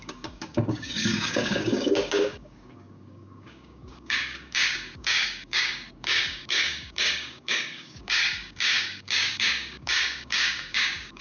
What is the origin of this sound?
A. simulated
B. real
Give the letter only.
A